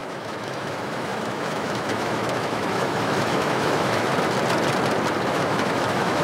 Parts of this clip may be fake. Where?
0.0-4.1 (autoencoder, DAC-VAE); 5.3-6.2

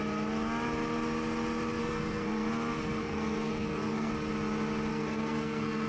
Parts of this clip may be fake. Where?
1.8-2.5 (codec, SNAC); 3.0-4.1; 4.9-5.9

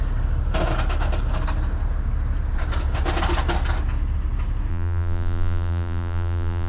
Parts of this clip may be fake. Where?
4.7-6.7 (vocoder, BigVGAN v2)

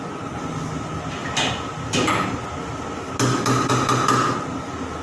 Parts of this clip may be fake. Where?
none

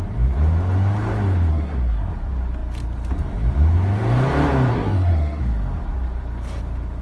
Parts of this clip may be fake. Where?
1.5-2.1 (codec, SNAC); 4.7-5.4

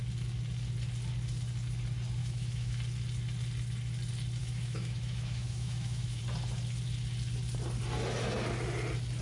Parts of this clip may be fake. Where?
2.2-2.8 (autoencoder, DAC-VAE); 4.4-6.2